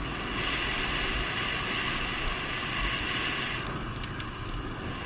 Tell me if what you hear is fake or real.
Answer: real